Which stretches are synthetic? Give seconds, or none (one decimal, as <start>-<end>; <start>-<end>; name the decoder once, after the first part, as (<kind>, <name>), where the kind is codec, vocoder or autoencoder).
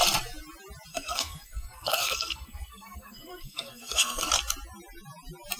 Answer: 0.9-4.3 (codec, SNAC)